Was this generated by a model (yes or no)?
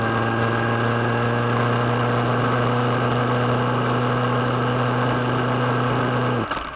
no